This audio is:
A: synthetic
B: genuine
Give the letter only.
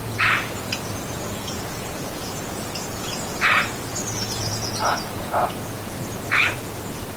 A